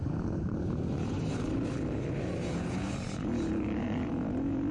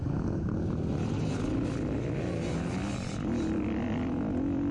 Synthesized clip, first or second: first